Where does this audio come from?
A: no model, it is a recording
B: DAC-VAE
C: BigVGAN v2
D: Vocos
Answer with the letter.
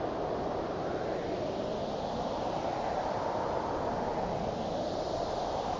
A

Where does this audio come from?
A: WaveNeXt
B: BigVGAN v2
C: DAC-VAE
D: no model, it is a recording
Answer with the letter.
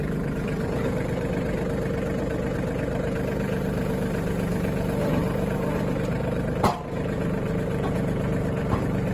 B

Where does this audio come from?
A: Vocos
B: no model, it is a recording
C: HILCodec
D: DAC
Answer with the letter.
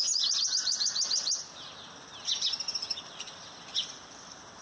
B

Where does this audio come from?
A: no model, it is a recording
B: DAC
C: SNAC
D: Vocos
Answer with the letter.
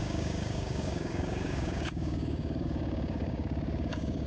B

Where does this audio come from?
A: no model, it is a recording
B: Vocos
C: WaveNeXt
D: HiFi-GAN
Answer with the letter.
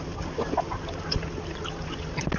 A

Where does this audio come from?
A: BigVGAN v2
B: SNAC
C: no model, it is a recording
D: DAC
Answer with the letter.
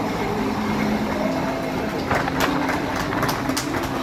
C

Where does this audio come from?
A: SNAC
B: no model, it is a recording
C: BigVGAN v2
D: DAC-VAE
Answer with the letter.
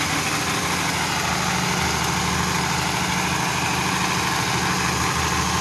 B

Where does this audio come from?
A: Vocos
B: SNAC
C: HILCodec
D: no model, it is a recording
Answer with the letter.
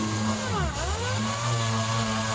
D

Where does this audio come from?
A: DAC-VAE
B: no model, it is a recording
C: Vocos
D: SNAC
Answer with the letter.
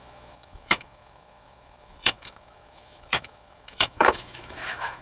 A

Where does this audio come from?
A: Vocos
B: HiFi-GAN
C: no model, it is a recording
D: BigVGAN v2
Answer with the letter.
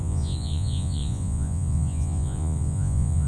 A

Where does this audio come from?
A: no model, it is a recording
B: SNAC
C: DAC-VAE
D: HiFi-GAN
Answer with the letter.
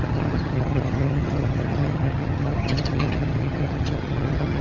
D